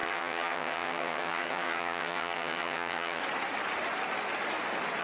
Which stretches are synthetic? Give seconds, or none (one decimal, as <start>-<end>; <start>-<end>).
0.0-3.2